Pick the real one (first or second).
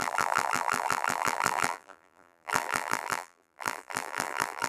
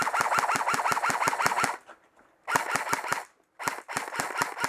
second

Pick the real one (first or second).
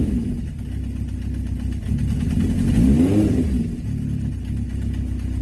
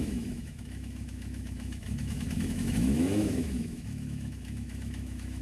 first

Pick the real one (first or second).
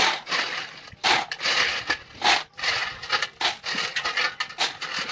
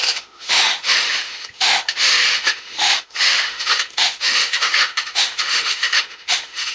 first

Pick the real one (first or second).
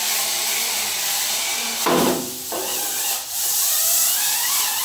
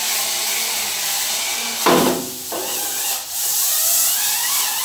second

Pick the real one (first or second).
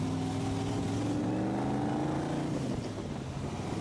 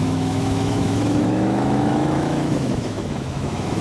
first